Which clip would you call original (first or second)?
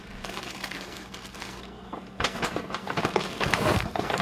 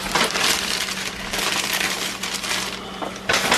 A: second